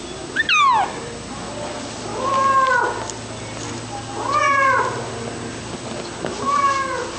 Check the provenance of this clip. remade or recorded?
recorded